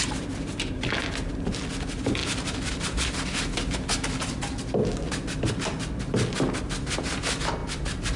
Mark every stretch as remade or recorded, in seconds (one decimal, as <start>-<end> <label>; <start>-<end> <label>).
0.0-8.2 recorded